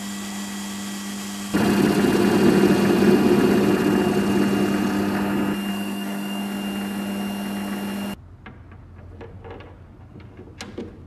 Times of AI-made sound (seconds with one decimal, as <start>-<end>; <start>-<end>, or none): 5.7-6.4